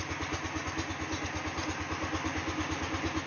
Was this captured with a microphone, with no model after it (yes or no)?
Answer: yes